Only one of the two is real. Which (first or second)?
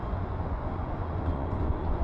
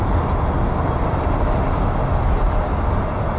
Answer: second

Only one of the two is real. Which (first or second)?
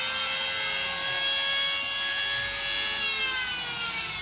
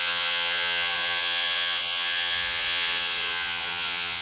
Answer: first